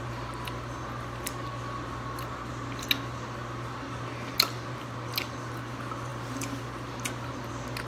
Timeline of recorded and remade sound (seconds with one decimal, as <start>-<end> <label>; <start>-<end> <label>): 0.0-7.9 recorded